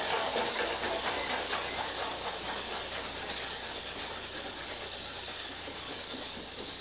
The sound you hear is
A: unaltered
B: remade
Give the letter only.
B